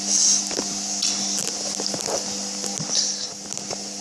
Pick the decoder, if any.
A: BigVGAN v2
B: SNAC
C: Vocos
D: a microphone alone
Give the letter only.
D